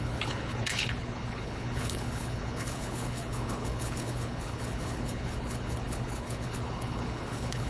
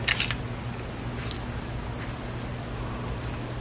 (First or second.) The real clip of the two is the second